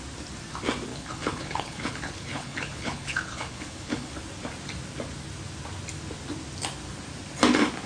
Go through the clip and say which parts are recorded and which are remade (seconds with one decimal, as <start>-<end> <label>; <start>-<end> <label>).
0.0-0.9 recorded; 0.9-4.1 remade; 4.1-7.9 recorded